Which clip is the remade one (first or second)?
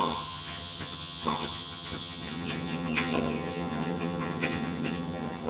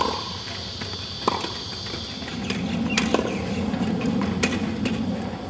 first